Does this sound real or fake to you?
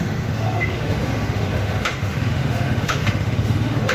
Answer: fake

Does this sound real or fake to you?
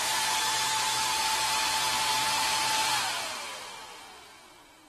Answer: real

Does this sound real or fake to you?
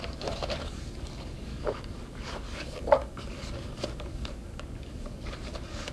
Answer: fake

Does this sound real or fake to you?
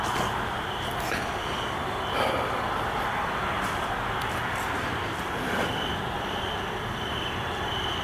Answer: real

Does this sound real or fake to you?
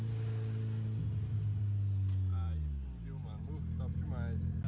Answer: real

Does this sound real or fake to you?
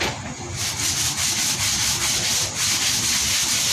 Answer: real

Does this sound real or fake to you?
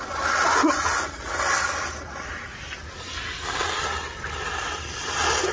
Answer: real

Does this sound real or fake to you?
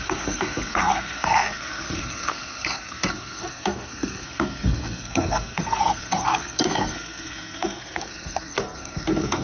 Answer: fake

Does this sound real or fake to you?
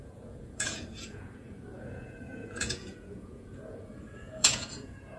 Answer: fake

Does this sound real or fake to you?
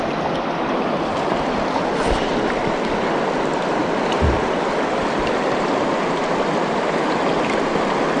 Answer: real